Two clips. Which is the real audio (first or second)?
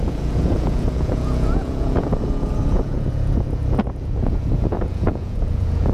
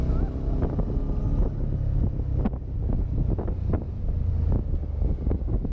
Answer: second